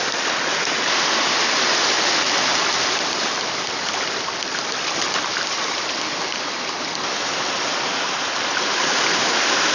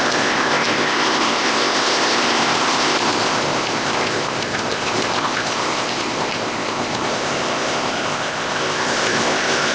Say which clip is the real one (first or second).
first